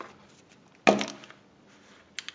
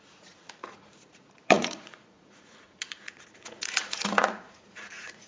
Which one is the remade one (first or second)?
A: second